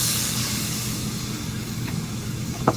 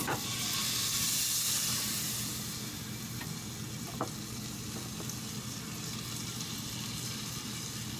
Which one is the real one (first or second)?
second